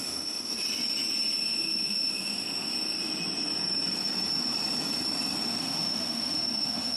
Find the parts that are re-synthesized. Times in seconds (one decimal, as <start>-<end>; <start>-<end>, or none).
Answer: 0.0-0.5; 1.4-2.7; 5.6-7.0